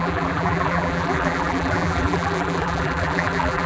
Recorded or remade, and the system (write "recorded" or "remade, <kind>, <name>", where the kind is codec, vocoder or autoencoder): remade, vocoder, BigVGAN v2